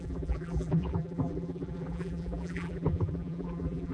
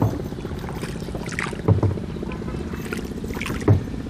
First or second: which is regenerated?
first